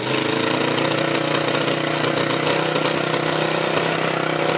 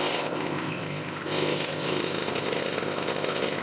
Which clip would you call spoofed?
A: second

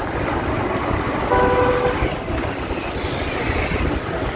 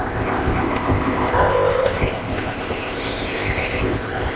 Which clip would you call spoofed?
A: second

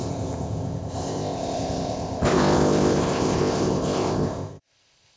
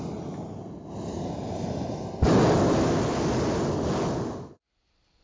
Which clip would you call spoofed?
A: first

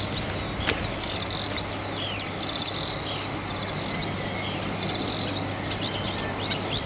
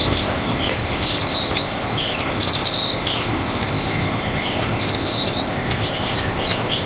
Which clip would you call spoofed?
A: second